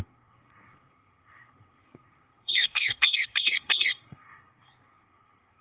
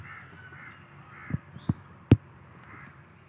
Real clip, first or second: second